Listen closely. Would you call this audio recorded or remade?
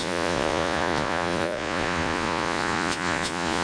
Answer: remade